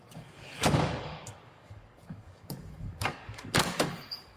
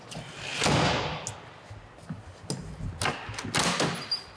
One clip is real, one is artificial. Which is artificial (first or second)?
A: first